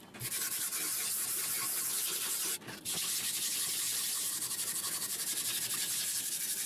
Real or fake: real